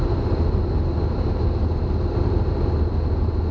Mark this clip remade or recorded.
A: recorded